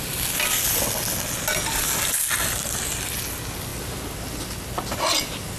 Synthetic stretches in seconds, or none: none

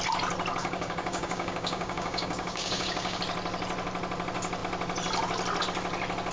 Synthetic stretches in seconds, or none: 0.6-3.2 (codec, DAC)

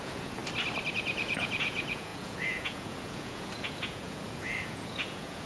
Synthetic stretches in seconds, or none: 0.0-0.4 (vocoder, Vocos); 0.9-5.5